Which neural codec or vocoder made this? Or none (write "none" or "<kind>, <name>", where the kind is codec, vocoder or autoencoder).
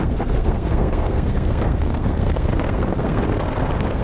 codec, SNAC